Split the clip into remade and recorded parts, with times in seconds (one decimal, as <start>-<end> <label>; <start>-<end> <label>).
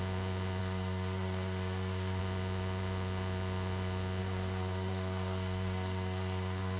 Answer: 0.0-0.6 recorded; 0.6-2.2 remade; 2.2-4.2 recorded; 4.2-6.8 remade